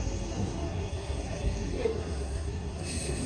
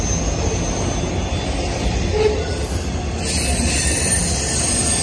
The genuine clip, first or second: second